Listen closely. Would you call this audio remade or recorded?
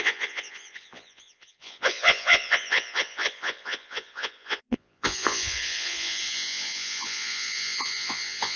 remade